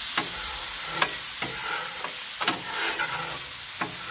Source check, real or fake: real